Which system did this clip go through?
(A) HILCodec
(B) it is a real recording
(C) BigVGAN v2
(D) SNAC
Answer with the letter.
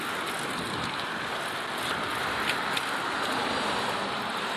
B